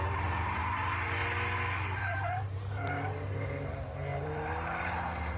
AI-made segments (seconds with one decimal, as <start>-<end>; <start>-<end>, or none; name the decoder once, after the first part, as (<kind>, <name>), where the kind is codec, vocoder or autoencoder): 0.0-1.2 (vocoder, BigVGAN v2); 2.0-5.4